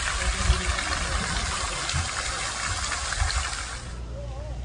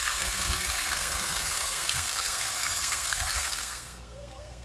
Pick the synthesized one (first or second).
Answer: second